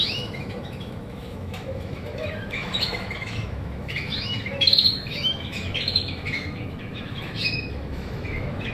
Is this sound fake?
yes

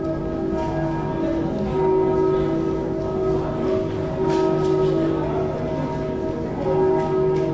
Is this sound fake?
no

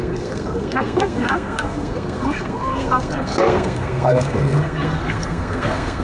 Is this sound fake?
yes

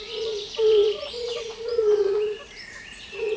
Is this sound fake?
yes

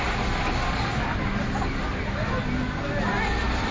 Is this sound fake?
no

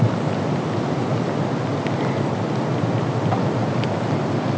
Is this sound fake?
no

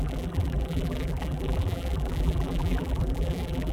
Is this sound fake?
yes